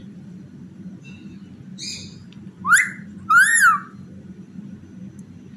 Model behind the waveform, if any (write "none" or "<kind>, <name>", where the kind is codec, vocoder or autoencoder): none